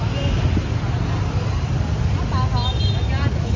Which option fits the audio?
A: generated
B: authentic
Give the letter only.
B